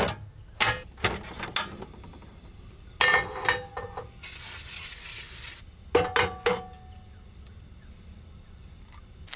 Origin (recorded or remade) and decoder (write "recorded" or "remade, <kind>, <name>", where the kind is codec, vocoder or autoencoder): recorded